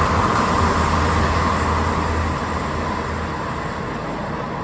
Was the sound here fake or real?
real